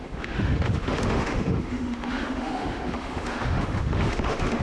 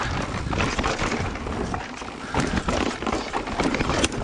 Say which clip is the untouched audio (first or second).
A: second